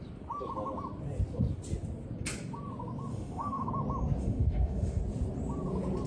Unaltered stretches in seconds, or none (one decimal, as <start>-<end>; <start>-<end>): 0.0-3.1; 3.7-4.2; 5.0-6.1